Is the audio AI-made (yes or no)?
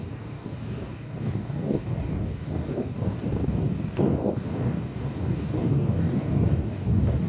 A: yes